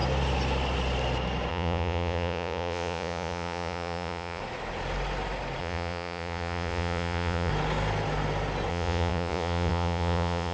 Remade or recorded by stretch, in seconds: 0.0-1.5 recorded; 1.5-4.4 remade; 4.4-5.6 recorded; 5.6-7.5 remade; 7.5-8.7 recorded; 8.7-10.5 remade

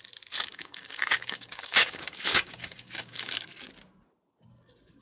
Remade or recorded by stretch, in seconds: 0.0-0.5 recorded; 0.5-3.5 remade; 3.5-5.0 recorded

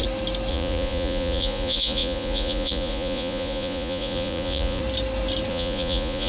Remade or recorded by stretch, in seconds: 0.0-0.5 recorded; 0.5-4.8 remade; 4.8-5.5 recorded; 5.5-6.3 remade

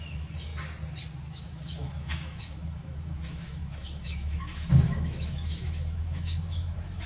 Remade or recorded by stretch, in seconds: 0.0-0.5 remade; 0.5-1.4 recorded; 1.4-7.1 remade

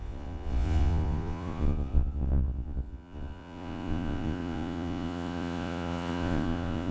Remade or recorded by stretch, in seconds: 0.0-6.9 remade

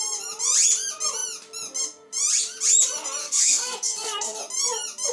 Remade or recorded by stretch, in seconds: 0.0-3.2 recorded; 3.2-4.4 remade; 4.4-5.1 recorded

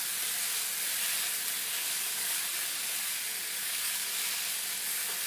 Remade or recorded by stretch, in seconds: 0.0-1.7 recorded; 1.7-2.4 remade; 2.4-3.6 recorded; 3.6-4.2 remade; 4.2-5.3 recorded

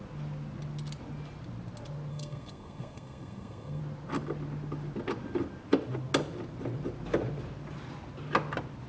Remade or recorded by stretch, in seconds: 0.0-2.1 recorded; 2.1-3.8 remade; 3.8-8.9 recorded